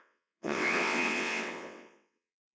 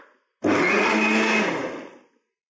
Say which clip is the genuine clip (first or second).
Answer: second